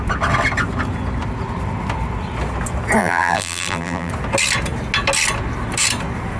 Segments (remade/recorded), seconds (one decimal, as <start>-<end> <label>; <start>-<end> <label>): 0.0-3.0 recorded; 3.0-4.1 remade; 4.1-6.4 recorded

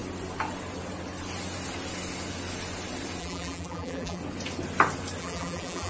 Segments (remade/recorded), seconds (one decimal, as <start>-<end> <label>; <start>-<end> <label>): 0.0-3.2 recorded; 3.2-4.2 remade; 4.2-5.2 recorded; 5.2-5.9 remade

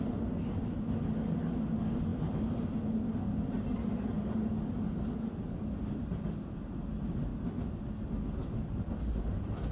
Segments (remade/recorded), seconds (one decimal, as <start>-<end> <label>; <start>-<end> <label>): 0.0-9.7 recorded